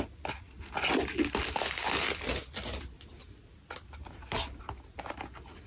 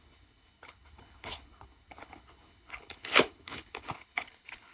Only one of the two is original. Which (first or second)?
first